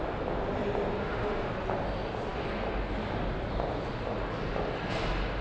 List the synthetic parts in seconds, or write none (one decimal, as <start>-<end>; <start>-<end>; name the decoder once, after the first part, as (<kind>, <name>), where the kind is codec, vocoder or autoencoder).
1.0-1.5 (autoencoder, DAC-VAE)